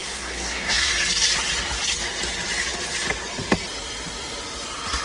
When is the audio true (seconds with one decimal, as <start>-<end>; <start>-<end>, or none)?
0.9-5.0